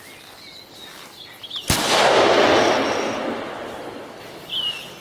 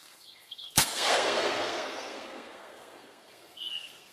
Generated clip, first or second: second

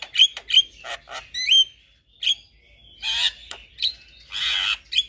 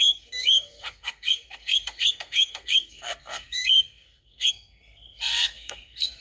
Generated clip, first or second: second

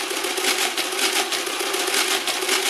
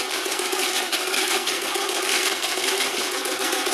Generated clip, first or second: second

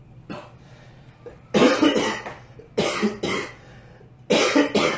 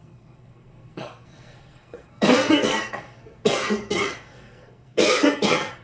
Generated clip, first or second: second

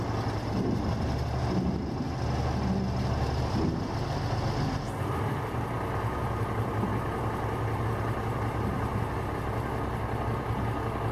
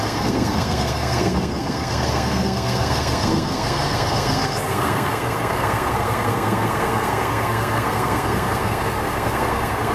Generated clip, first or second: second